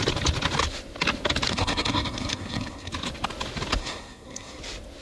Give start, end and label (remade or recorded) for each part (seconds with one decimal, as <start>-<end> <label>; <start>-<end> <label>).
0.0-1.5 recorded; 1.5-2.9 remade; 2.9-3.8 recorded; 3.8-4.6 remade; 4.6-5.0 recorded